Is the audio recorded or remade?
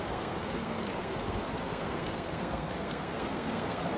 remade